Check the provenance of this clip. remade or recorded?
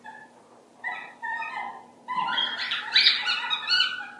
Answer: recorded